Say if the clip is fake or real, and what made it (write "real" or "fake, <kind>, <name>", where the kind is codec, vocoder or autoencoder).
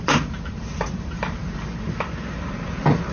fake, vocoder, BigVGAN v2